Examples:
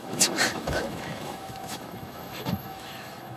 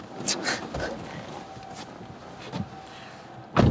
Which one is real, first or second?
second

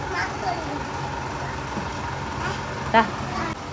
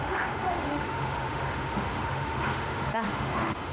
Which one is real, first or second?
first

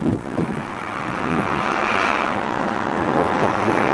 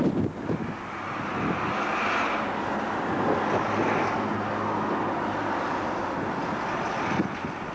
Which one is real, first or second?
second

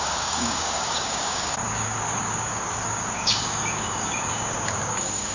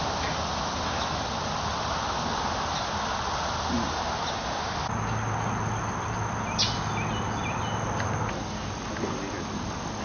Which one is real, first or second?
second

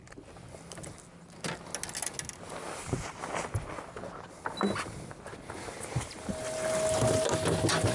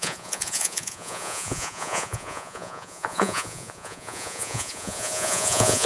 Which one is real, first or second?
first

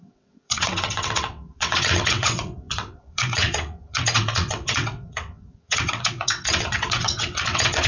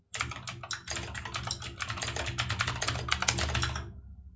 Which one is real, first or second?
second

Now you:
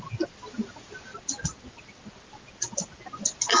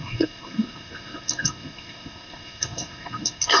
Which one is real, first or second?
first